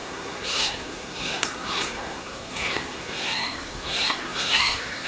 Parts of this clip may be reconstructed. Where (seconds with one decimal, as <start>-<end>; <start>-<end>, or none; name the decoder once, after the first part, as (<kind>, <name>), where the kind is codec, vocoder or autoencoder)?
0.0-5.1 (codec, SNAC)